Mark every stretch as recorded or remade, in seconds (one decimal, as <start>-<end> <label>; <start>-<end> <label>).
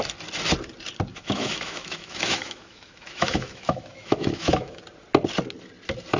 0.0-1.1 recorded; 1.1-4.8 remade; 4.8-6.2 recorded